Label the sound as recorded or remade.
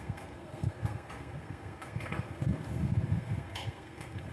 remade